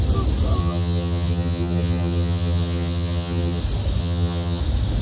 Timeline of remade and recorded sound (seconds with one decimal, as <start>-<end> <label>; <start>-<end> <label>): 0.0-0.6 recorded; 0.6-3.6 remade; 3.6-4.0 recorded; 4.0-4.6 remade; 4.6-5.0 recorded